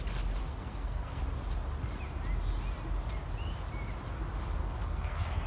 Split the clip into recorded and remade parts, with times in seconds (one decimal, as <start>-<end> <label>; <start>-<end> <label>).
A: 0.0-0.4 recorded; 0.4-1.2 remade; 1.2-4.6 recorded; 4.6-5.5 remade

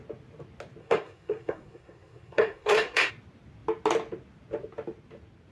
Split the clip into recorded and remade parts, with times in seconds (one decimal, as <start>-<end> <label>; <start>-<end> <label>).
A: 0.0-0.8 recorded; 0.8-3.1 remade; 3.1-5.5 recorded

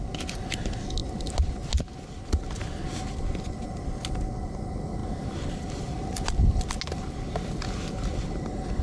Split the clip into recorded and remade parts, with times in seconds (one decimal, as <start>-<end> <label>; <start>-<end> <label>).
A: 0.0-8.8 recorded

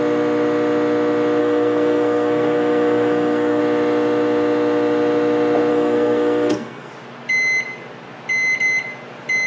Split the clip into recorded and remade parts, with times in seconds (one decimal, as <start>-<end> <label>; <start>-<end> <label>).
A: 0.0-1.4 recorded; 1.4-3.6 remade; 3.6-5.7 recorded; 5.7-6.9 remade; 6.9-9.5 recorded

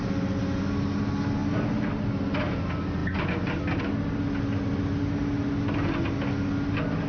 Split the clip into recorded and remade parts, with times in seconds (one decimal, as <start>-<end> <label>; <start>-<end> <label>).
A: 0.0-7.1 recorded